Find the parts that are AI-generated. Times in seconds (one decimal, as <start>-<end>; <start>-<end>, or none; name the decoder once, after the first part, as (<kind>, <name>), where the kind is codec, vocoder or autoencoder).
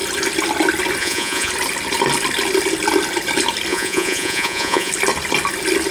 1.0-1.5 (vocoder, Vocos); 3.7-4.9